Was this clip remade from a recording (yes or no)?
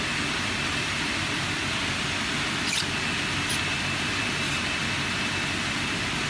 no